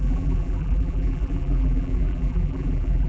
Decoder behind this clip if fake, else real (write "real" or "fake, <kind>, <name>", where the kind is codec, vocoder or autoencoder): fake, vocoder, BigVGAN v2